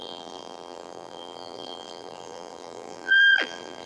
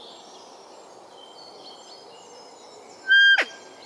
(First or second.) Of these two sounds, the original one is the second